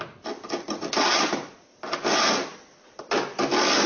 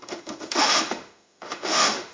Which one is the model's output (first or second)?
second